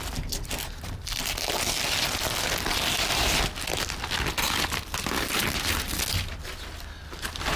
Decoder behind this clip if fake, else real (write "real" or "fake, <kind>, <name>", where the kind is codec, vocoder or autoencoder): real